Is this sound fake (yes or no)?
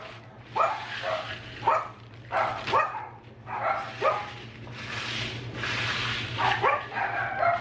no